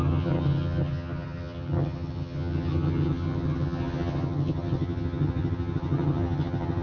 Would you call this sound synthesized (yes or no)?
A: yes